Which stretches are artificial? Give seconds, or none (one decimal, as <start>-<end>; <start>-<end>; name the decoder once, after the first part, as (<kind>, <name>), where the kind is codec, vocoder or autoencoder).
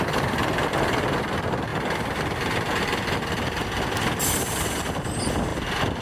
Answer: none